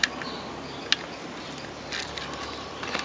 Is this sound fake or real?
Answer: real